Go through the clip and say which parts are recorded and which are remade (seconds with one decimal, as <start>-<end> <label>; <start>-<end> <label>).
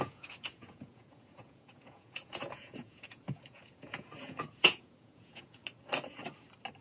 0.0-5.6 remade; 5.6-6.8 recorded